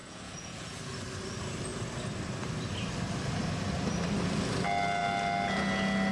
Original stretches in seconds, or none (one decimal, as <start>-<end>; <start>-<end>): 0.8-6.1